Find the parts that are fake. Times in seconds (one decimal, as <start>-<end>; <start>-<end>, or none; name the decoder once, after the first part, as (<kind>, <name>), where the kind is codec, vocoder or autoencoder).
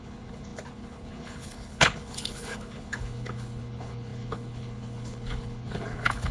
0.0-6.3 (codec, HILCodec)